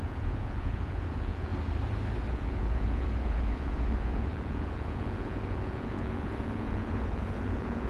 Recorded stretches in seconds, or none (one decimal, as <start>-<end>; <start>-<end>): 1.5-2.3